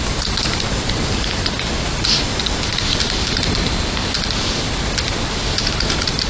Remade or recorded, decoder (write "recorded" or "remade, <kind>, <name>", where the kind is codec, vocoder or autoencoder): recorded